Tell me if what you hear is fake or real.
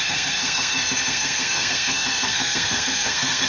fake